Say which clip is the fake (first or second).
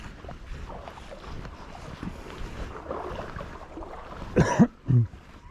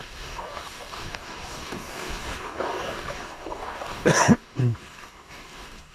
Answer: second